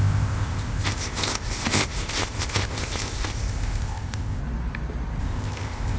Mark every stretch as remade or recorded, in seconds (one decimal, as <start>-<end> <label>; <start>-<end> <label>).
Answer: 0.0-4.4 remade; 4.4-5.2 recorded; 5.2-6.0 remade